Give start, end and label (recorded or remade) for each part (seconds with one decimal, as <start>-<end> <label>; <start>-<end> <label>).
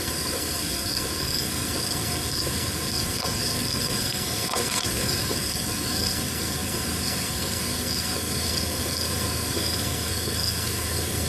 0.0-11.3 remade